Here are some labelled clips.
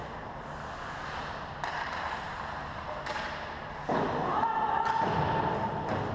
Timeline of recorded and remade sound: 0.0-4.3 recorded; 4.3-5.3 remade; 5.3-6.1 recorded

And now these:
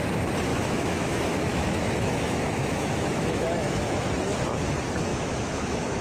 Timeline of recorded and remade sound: 0.0-0.5 recorded; 0.5-4.1 remade; 4.1-5.1 recorded; 5.1-6.0 remade

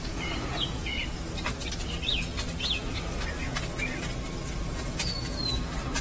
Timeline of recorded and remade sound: 0.0-1.0 remade; 1.0-4.6 recorded; 4.6-5.2 remade; 5.2-6.0 recorded

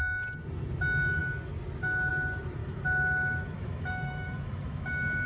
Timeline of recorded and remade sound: 0.0-2.6 recorded; 2.6-5.3 remade

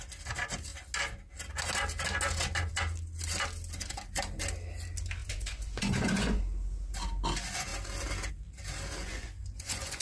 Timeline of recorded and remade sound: 0.0-5.2 recorded; 5.2-6.4 remade; 6.4-9.0 recorded; 9.0-10.0 remade